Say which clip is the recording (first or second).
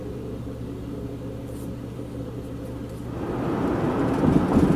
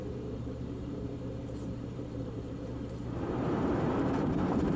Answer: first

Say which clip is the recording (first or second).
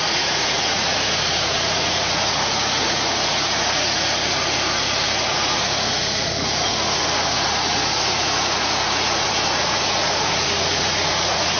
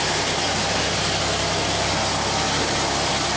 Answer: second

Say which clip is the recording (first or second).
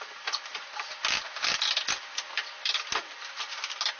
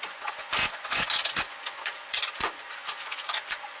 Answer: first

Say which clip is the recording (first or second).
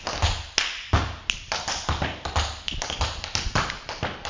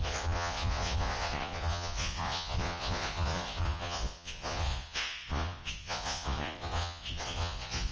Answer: first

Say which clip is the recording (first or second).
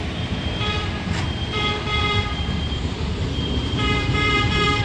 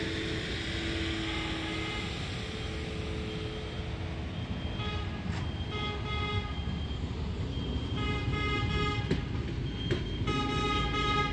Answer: second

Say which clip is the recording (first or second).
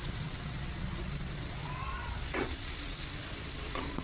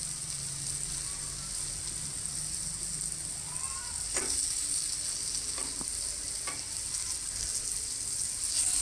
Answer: second